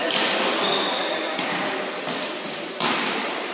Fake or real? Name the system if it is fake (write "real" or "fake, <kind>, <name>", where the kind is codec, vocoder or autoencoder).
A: real